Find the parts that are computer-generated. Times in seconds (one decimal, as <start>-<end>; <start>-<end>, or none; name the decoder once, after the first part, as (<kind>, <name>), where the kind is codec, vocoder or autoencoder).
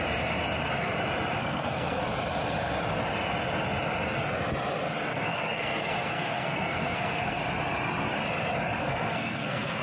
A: 1.4-2.0 (codec, SNAC); 5.1-7.4; 8.8-9.8